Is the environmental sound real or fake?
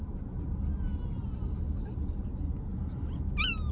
real